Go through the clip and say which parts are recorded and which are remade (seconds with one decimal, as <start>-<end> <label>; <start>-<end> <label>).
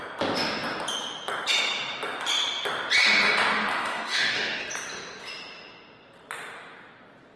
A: 0.0-3.7 recorded; 3.7-4.6 remade; 4.6-7.4 recorded